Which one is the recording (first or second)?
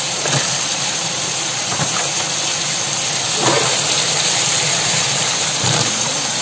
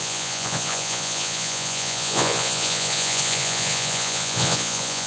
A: first